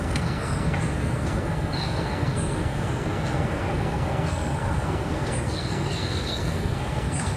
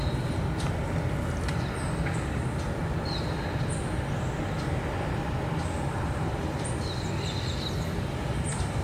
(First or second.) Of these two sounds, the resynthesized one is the first